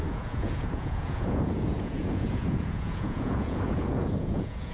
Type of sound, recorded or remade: remade